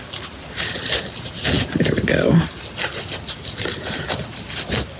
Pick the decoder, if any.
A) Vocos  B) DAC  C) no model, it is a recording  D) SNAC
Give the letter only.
C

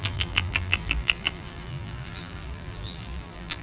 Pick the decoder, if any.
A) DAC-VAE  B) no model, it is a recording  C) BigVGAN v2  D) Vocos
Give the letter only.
C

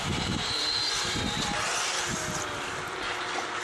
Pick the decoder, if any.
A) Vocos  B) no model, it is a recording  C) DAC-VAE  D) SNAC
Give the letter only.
B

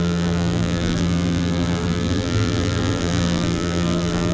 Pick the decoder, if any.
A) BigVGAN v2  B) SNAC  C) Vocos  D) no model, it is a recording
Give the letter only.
A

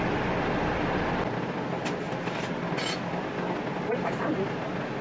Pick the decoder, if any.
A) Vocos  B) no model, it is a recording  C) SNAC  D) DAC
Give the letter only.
B